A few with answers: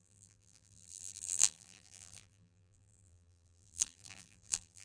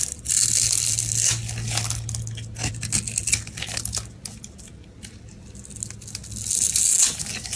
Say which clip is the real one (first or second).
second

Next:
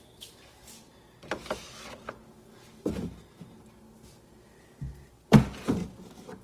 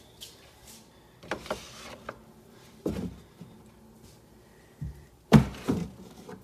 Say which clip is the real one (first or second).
first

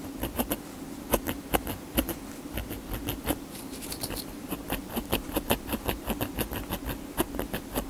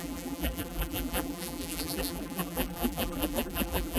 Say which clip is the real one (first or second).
first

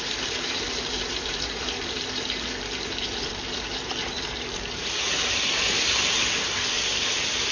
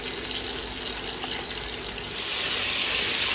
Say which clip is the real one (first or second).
second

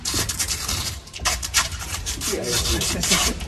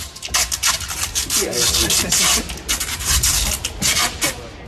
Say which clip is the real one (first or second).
second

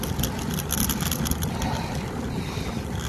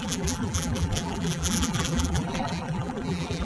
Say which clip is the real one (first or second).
first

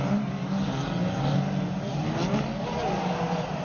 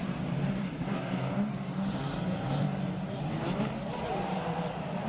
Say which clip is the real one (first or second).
first